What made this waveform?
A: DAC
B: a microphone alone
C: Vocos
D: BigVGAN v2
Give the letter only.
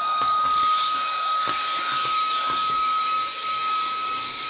A